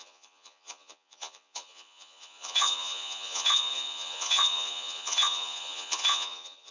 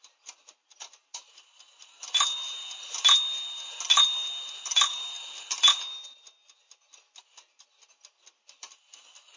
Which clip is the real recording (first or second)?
second